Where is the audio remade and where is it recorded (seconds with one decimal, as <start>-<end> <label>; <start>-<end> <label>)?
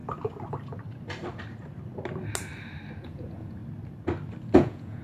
0.0-3.0 recorded; 3.0-3.6 remade; 3.6-4.5 recorded; 4.5-5.0 remade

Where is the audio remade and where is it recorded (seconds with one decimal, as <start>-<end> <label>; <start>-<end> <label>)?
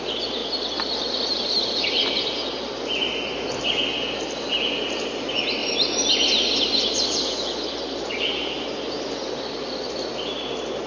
0.0-10.9 recorded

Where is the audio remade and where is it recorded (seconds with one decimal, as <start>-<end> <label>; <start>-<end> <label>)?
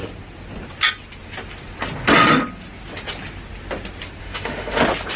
0.0-4.2 recorded; 4.2-4.8 remade; 4.8-5.2 recorded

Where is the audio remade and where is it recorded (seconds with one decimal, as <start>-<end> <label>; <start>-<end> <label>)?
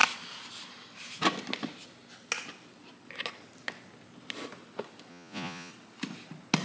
0.0-5.1 recorded; 5.1-5.7 remade; 5.7-6.6 recorded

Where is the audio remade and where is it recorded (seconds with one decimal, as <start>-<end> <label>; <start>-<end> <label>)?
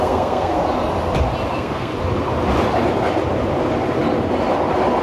0.0-0.6 remade; 0.6-1.5 recorded; 1.5-1.9 remade; 1.9-5.0 recorded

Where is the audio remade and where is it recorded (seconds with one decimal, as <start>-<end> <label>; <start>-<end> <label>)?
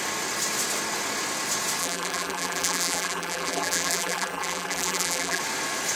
0.0-1.8 recorded; 1.8-5.4 remade; 5.4-6.0 recorded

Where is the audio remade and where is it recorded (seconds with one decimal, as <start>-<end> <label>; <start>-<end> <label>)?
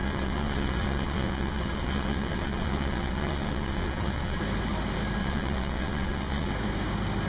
0.0-4.4 remade; 4.4-5.2 recorded; 5.2-6.5 remade; 6.5-7.3 recorded